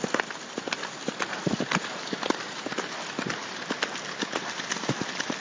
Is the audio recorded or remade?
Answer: recorded